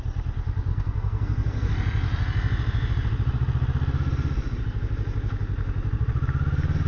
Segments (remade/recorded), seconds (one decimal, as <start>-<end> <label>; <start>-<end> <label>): 0.0-0.7 recorded; 0.7-1.7 remade; 1.7-6.9 recorded